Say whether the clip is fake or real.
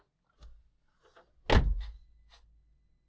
real